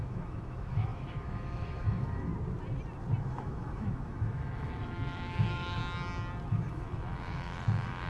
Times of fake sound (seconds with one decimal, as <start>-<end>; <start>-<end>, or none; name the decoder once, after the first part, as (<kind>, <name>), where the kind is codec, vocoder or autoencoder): 0.0-2.3 (autoencoder, DAC-VAE); 3.2-5.8; 6.5-8.1